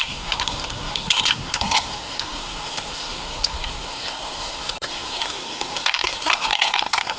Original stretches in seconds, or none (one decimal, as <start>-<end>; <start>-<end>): none